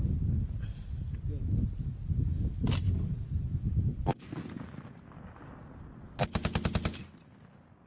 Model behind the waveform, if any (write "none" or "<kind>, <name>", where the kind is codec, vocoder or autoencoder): none